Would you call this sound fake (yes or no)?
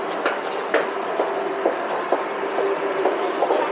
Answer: no